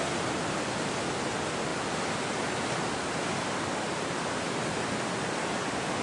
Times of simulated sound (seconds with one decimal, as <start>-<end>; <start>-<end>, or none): none

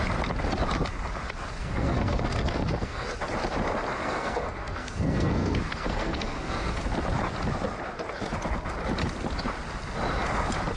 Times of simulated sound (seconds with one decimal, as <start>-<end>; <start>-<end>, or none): 1.6-3.1; 4.0-6.8

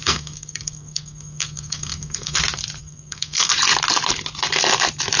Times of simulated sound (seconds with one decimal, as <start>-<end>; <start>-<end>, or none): 0.0-2.4; 2.8-3.5

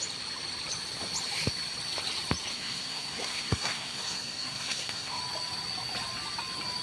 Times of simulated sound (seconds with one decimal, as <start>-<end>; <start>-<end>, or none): 2.5-5.2

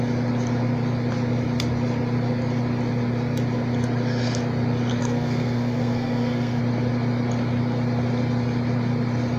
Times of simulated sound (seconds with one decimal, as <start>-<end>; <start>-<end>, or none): 5.0-6.6